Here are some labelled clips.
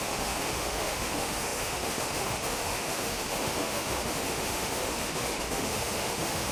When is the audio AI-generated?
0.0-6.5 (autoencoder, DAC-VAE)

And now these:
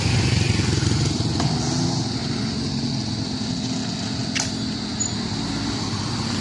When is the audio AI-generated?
2.2-2.9 (vocoder, BigVGAN v2)